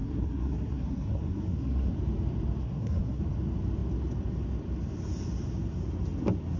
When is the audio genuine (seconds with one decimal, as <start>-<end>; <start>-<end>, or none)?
1.9-2.6; 3.2-6.6